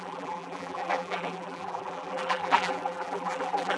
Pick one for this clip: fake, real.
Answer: fake